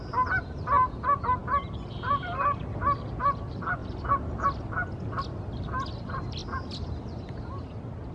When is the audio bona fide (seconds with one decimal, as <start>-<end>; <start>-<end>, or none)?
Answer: 0.0-3.8; 5.2-6.4